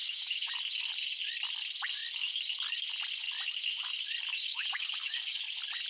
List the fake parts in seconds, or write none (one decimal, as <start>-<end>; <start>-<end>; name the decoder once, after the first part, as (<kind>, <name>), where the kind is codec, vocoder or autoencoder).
0.0-0.5 (codec, DAC); 4.5-5.4